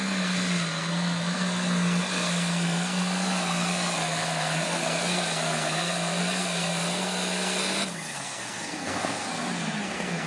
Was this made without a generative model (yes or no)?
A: no